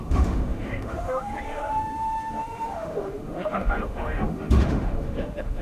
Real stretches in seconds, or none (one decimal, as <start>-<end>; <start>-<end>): none